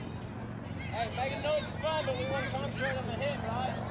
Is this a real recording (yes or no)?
yes